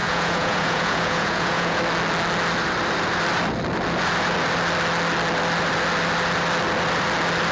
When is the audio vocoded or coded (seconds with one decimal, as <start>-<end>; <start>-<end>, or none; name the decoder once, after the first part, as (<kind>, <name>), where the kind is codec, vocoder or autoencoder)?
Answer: 0.0-1.8 (vocoder, Vocos)